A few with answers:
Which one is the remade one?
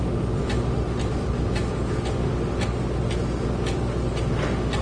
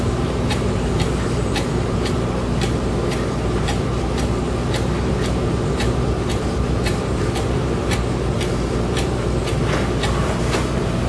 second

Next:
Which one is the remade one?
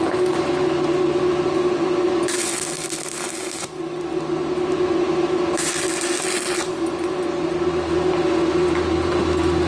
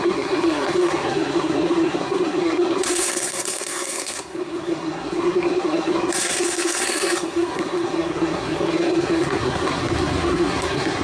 second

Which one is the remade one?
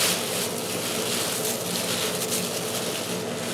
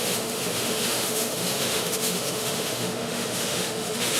second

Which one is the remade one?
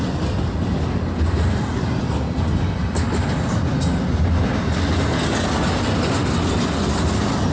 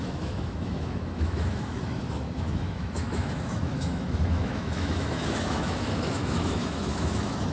second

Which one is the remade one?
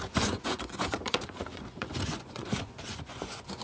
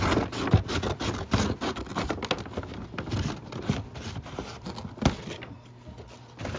first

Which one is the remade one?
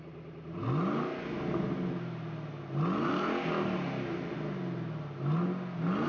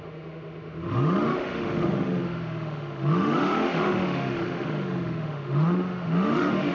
second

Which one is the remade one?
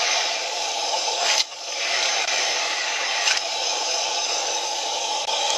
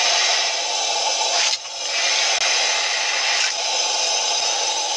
first